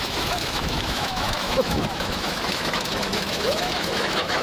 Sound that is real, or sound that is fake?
fake